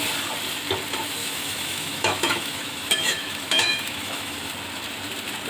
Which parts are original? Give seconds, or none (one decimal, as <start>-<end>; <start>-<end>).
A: 0.0-1.2; 4.5-5.5